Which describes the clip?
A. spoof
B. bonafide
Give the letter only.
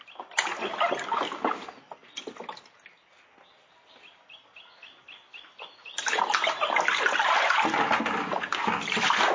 B